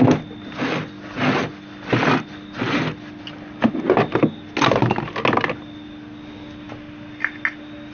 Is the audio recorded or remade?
recorded